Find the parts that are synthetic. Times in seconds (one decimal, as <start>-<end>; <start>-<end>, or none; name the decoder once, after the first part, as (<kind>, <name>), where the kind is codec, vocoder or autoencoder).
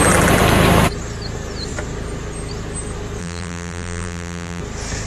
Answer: 3.2-4.6 (vocoder, BigVGAN v2)